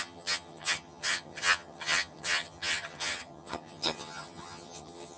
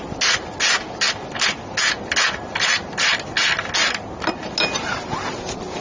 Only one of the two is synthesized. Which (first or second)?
first